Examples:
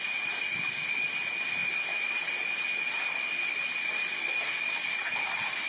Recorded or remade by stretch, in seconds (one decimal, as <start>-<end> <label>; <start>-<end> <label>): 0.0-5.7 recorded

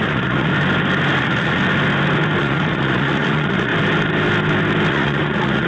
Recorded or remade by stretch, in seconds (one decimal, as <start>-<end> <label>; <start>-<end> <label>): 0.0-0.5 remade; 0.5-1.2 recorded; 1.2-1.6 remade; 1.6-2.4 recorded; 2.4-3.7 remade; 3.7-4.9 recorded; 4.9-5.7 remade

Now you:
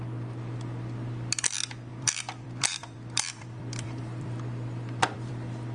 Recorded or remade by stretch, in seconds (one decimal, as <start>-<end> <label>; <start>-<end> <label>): 0.0-1.9 recorded; 1.9-5.3 remade; 5.3-5.7 recorded

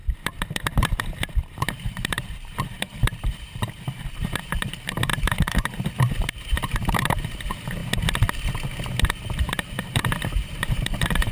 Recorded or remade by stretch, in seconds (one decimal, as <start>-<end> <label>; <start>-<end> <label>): 0.0-7.8 remade; 7.8-9.4 recorded; 9.4-11.3 remade